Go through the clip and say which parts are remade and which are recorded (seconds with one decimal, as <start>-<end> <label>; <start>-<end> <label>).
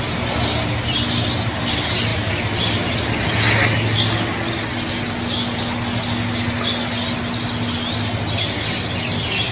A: 0.0-9.5 recorded